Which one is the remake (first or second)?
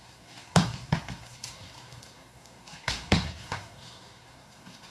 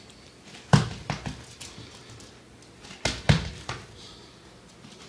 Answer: first